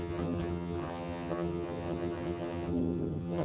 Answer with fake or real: fake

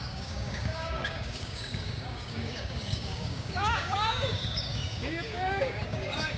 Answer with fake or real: fake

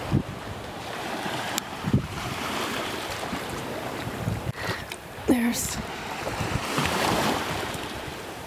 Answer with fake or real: fake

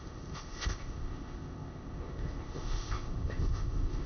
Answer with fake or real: fake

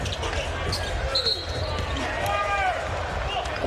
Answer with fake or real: real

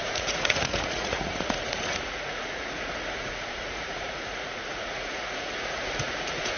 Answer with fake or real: fake